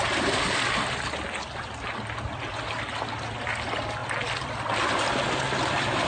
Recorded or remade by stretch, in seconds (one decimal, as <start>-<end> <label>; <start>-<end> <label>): 0.0-6.1 recorded